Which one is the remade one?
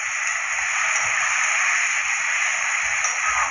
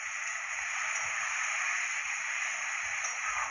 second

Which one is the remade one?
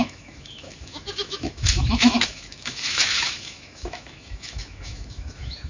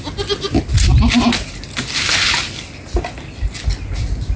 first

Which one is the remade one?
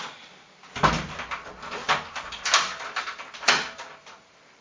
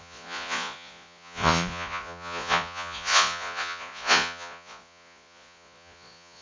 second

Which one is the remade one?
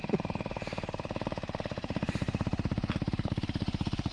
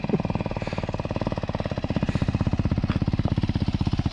first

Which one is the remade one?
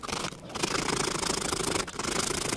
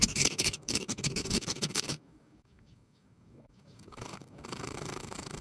second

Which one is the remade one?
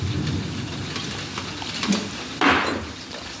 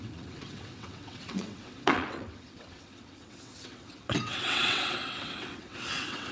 second